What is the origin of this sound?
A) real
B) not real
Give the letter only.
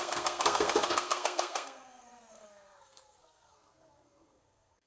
B